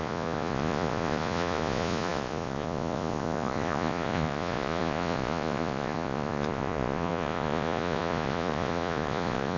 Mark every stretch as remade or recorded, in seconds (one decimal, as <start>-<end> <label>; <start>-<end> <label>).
0.0-9.6 remade